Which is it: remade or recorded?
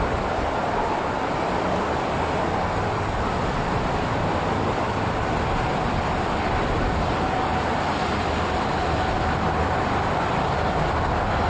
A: remade